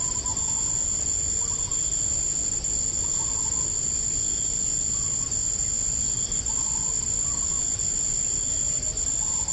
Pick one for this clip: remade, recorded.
recorded